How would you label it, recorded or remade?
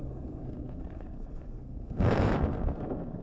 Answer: remade